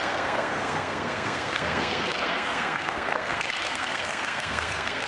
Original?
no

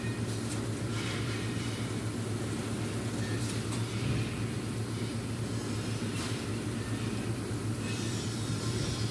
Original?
yes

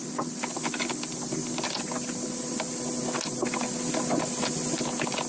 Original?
yes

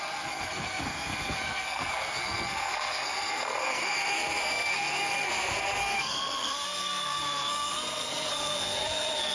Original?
no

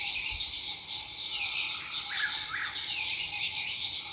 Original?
yes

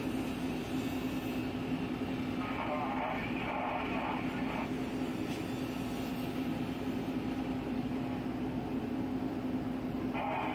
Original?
yes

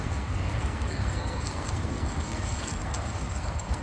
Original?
no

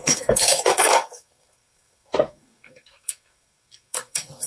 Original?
no